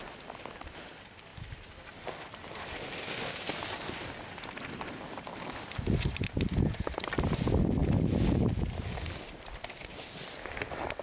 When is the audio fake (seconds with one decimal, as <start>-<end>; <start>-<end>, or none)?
7.8-9.3